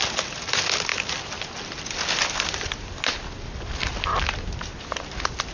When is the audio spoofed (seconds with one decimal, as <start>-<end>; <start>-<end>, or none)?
none